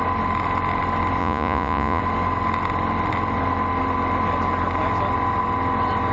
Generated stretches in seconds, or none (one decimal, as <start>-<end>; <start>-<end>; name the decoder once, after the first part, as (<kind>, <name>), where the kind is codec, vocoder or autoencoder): 1.2-2.0 (vocoder, Vocos)